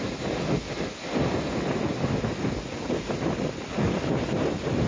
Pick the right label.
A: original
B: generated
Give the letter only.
A